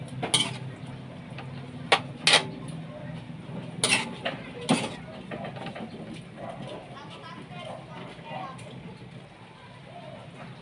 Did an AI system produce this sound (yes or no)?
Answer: no